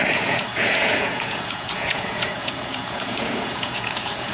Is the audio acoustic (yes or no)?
no